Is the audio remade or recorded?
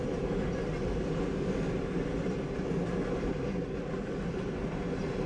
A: recorded